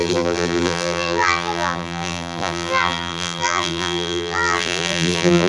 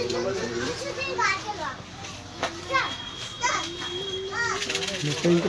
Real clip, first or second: second